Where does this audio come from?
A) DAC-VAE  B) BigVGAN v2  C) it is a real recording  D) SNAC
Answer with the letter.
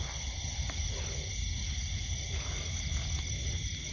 B